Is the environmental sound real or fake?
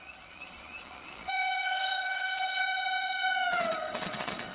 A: fake